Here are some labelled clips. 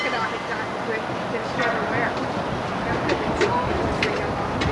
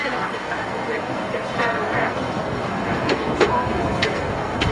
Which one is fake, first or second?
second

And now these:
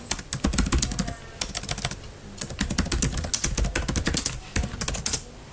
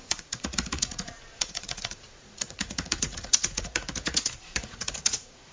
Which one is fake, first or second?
second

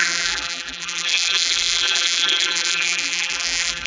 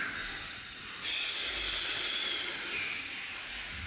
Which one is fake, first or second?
first